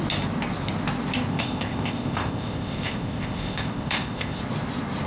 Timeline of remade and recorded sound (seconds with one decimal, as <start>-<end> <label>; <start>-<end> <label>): 0.0-1.3 recorded; 1.3-4.4 remade; 4.4-5.1 recorded